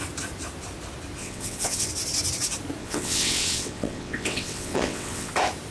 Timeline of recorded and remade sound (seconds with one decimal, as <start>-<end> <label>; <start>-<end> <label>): 0.0-1.2 recorded; 1.2-1.9 remade; 1.9-2.8 recorded; 2.8-5.3 remade; 5.3-5.7 recorded